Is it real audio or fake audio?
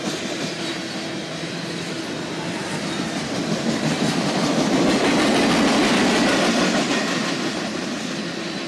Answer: real